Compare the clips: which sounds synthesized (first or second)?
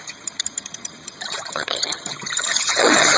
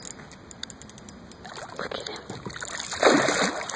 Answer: first